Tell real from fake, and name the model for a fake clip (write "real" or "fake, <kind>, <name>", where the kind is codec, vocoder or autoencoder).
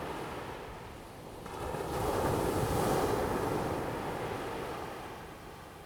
real